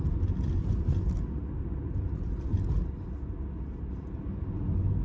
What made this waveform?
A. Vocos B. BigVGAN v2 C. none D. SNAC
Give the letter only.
C